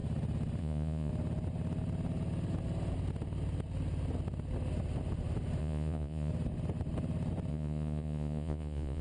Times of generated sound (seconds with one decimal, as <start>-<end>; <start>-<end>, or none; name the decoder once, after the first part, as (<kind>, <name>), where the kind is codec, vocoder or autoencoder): 0.6-1.1 (vocoder, Vocos); 5.6-6.3; 7.5-9.0